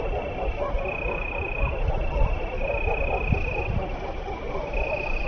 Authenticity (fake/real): real